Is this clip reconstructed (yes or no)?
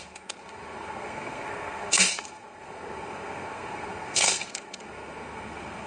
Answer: yes